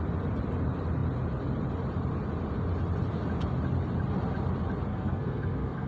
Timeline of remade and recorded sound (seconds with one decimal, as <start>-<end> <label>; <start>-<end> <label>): 0.0-4.9 recorded; 4.9-5.9 remade